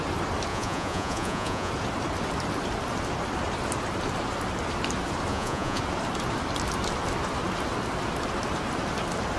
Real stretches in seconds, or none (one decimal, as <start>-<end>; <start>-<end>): 0.0-0.5; 1.7-5.3; 5.8-9.4